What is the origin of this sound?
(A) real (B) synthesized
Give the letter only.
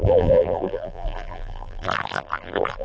B